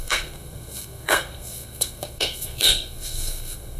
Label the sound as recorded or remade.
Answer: remade